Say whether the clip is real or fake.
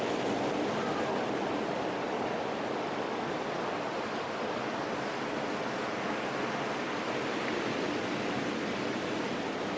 real